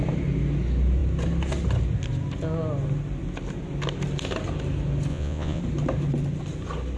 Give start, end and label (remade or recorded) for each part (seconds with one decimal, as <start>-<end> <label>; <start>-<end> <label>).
0.0-5.1 recorded; 5.1-5.6 remade; 5.6-7.0 recorded